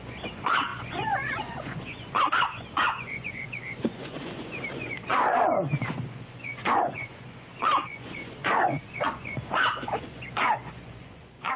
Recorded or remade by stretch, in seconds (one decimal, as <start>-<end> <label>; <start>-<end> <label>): 0.0-11.6 remade